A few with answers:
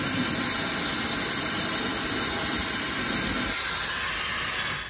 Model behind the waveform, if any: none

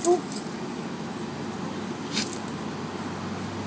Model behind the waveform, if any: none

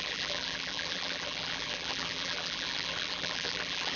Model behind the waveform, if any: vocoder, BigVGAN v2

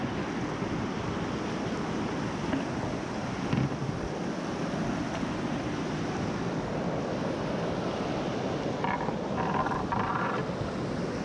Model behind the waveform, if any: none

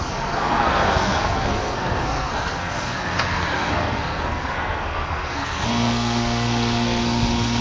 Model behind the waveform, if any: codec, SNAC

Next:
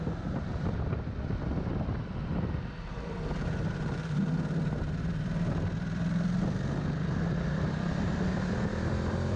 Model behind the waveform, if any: vocoder, BigVGAN v2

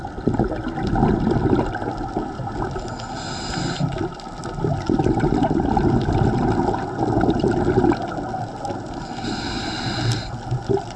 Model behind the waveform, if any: none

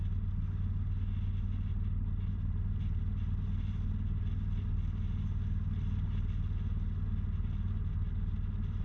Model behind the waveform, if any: none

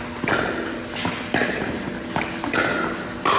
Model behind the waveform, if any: none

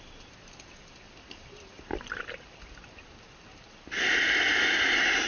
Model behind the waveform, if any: none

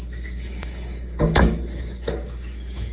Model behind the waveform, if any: codec, DAC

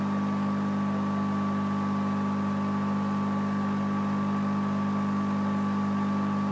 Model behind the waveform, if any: none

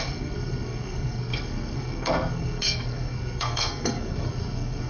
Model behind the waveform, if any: codec, SNAC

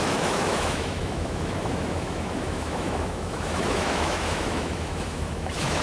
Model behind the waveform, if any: autoencoder, DAC-VAE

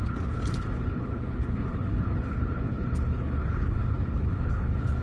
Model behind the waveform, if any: codec, HILCodec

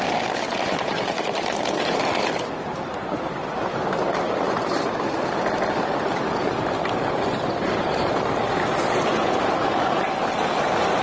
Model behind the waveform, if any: none